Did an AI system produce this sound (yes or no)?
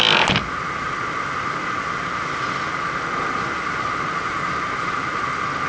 no